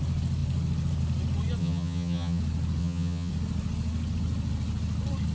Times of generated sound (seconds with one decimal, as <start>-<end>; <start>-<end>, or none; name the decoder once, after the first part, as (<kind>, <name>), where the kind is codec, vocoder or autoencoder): 1.6-2.4 (vocoder, HiFi-GAN); 2.8-3.3